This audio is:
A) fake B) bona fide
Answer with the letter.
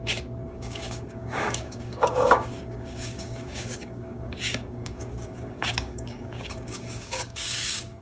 A